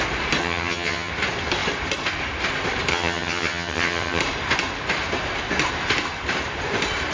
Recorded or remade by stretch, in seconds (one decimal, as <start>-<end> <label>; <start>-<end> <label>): 0.0-0.4 recorded; 0.4-1.1 remade; 1.1-2.9 recorded; 2.9-4.2 remade; 4.2-7.1 recorded

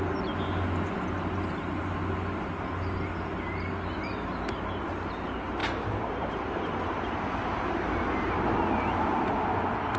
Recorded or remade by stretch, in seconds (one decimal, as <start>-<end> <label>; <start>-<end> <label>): 0.0-10.0 recorded

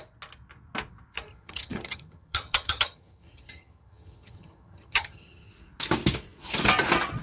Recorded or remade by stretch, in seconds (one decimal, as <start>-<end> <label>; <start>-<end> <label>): 0.0-1.3 recorded; 1.3-5.5 remade; 5.5-7.2 recorded

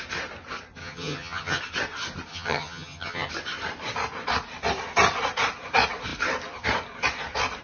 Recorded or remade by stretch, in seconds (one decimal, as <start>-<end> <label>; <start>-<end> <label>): 0.0-0.8 recorded; 0.8-1.6 remade; 1.6-2.3 recorded; 2.3-3.3 remade; 3.3-7.6 recorded

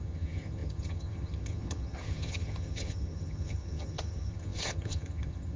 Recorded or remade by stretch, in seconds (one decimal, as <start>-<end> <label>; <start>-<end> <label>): 0.0-5.6 remade

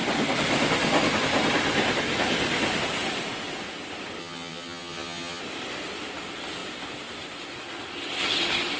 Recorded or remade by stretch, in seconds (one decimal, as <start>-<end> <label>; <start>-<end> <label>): 0.0-4.2 recorded; 4.2-5.4 remade; 5.4-8.8 recorded

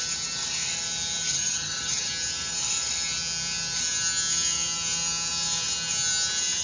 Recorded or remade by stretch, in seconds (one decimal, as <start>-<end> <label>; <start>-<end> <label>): 0.0-1.3 recorded; 1.3-2.1 remade; 2.1-6.6 recorded

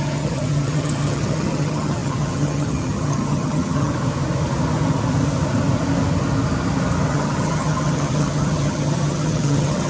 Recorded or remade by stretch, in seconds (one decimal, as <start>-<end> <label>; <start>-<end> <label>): 0.0-3.9 remade; 3.9-7.1 recorded; 7.1-9.9 remade